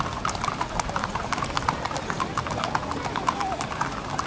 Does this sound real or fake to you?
real